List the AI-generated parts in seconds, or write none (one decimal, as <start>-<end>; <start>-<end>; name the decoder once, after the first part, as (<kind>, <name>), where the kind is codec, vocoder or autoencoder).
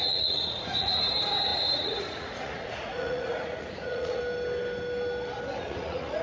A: 0.0-4.2 (vocoder, Vocos); 5.6-6.2